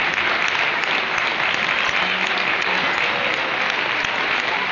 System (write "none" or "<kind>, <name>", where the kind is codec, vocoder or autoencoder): none